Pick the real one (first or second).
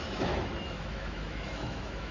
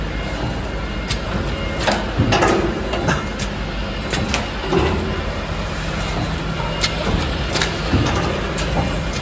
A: second